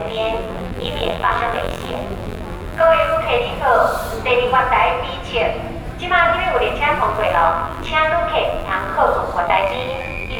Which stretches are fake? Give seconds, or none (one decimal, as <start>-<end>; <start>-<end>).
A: 0.0-3.1; 7.1-7.9; 8.5-8.9; 9.4-10.4